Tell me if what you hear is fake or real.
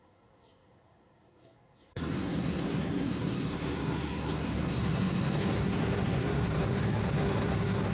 fake